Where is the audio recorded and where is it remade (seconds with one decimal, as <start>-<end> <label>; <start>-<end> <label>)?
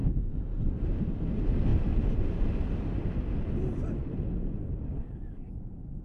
0.0-1.7 recorded; 1.7-5.3 remade; 5.3-6.0 recorded